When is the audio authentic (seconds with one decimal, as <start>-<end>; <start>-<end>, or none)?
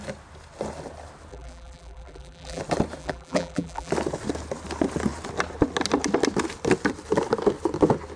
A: 0.0-1.3; 2.6-3.0; 3.9-8.2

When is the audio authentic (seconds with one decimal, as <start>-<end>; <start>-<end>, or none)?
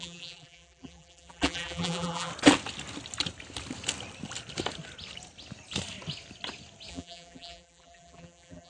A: 2.3-6.9